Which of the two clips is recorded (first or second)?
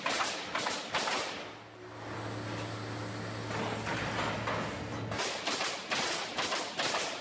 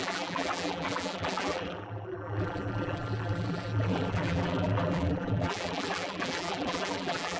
first